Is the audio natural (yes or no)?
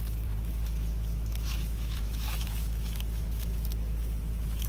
no